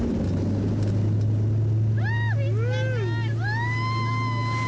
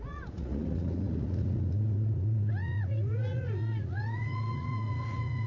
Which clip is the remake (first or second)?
second